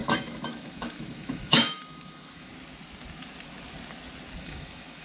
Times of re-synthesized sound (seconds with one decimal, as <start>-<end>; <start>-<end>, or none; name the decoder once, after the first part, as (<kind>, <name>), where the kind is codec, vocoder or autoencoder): 0.0-2.5 (autoencoder, DAC-VAE); 4.4-5.0